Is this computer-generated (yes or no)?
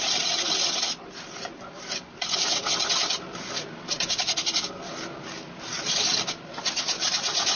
no